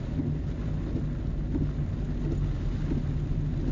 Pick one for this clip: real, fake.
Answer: real